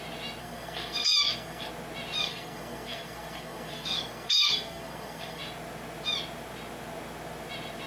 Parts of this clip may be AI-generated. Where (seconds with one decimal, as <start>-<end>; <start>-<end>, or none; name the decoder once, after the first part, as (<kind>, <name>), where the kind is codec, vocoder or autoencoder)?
0.4-1.7 (codec, SNAC); 2.2-5.4